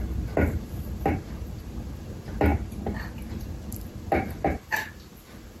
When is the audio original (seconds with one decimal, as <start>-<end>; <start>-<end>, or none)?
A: 2.5-3.3